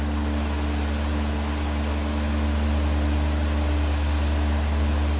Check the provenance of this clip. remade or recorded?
recorded